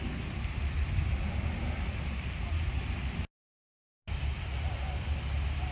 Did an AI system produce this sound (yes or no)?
no